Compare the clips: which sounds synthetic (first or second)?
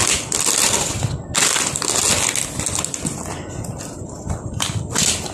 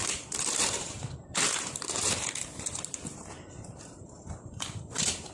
second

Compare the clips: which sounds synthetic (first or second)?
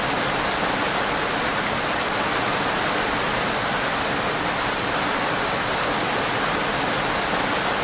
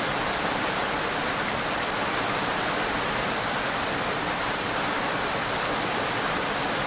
second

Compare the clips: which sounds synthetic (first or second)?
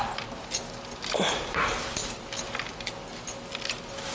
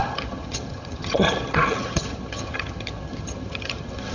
second